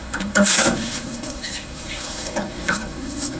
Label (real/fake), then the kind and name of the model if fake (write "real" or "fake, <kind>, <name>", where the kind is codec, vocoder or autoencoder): fake, codec, SNAC